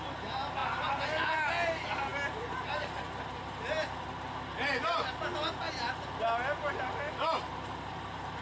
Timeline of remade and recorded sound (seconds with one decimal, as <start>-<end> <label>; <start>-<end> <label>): 0.0-8.4 recorded